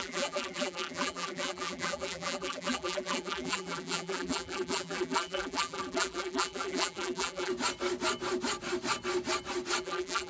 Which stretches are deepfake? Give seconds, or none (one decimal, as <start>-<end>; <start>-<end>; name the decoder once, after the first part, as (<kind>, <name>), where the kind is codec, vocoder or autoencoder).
0.0-7.5 (vocoder, BigVGAN v2); 9.8-10.3